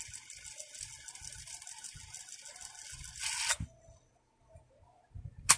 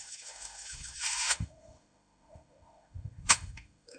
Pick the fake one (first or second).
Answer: second